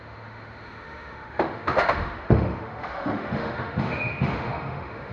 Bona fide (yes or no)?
no